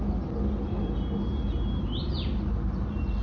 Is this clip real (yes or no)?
yes